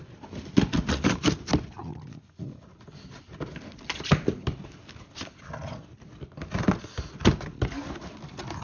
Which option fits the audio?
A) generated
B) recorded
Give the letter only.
B